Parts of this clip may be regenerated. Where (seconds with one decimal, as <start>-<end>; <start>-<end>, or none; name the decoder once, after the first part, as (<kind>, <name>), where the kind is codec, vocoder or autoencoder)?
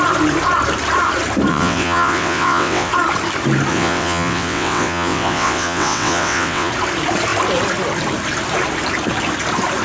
1.5-2.9 (vocoder, WaveNeXt); 3.7-6.7